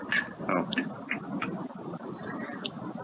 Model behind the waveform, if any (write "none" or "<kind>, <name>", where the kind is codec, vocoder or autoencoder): none